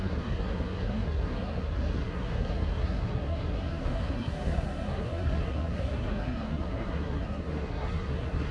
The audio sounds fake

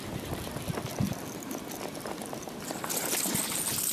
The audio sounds real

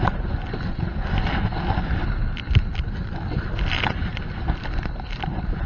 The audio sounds real